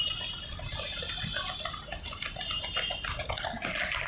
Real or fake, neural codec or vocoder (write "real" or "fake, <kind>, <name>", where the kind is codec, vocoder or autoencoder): fake, vocoder, BigVGAN v2